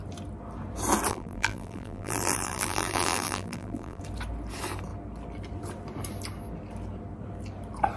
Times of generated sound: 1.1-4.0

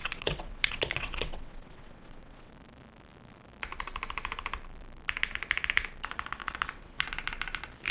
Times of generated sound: 0.0-2.5; 6.4-7.1

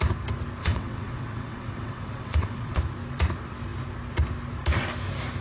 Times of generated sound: 0.6-2.8